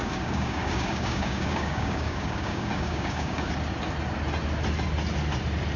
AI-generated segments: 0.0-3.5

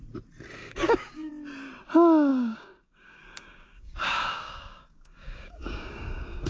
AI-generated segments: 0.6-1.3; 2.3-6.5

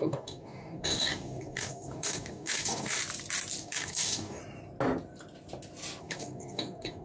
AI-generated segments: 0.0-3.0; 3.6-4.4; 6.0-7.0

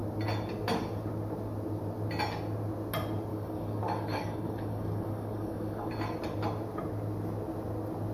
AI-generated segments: 3.3-5.9

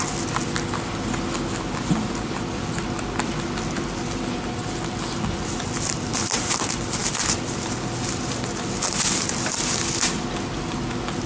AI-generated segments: none